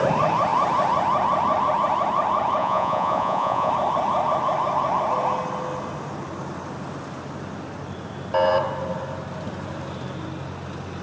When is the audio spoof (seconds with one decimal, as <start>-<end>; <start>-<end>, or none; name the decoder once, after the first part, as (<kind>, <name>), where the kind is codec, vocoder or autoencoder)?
2.6-3.7 (vocoder, Vocos)